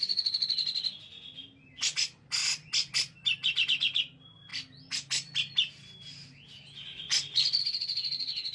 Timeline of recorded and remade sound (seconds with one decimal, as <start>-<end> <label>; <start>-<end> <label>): 0.0-8.5 recorded